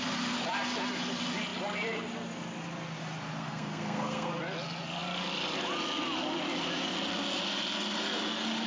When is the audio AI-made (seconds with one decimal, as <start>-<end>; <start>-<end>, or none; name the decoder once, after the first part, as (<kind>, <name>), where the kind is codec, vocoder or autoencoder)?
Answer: 3.4-4.3 (codec, SNAC)

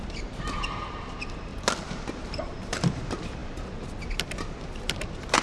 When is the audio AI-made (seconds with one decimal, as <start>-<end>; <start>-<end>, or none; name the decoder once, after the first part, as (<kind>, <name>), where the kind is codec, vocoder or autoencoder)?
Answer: 0.0-1.5 (vocoder, BigVGAN v2); 2.1-5.4

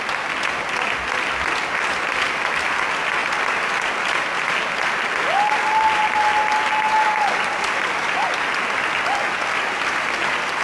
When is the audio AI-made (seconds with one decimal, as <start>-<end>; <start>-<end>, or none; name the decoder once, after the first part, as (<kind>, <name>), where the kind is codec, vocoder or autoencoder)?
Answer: none

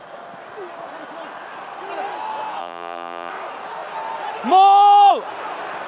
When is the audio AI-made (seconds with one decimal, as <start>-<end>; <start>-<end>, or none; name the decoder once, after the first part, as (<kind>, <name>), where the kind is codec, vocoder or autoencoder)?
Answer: 2.6-3.3 (vocoder, BigVGAN v2)

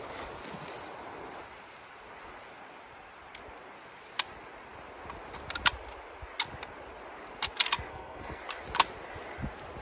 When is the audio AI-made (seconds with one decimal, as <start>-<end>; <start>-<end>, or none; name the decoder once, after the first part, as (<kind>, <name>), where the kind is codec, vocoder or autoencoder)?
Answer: 7.9-8.4 (codec, SNAC)

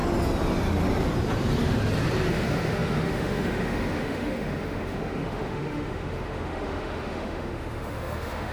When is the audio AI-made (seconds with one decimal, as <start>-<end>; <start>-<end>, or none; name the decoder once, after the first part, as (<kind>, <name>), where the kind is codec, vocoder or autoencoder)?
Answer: 2.3-8.5 (autoencoder, DAC-VAE)

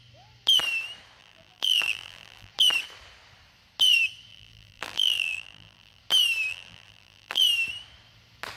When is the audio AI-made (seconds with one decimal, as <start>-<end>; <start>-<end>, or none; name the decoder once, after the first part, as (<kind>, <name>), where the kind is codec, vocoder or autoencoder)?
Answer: 1.2-2.5 (vocoder, BigVGAN v2); 4.3-6.0; 6.5-7.4